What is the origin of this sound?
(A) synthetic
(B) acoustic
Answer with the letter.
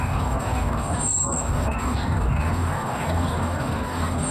A